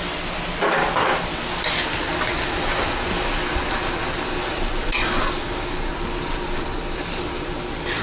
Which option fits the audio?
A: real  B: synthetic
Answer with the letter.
A